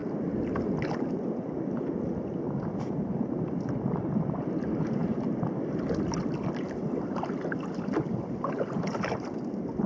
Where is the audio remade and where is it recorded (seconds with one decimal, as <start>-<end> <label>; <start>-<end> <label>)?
0.0-9.9 recorded